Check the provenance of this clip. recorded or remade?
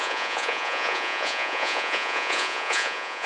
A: remade